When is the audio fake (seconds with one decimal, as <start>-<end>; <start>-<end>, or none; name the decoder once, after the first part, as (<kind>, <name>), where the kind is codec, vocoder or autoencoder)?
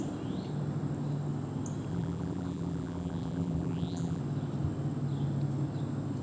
1.9-4.2 (vocoder, BigVGAN v2)